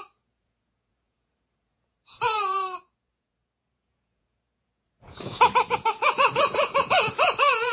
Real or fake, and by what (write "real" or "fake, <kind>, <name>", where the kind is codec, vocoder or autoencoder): fake, vocoder, Vocos